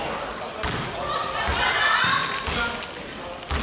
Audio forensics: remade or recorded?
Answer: recorded